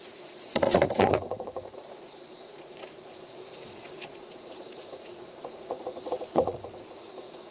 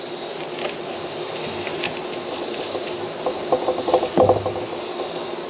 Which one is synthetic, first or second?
first